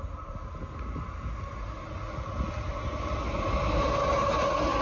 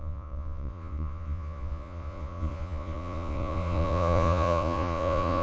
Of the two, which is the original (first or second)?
first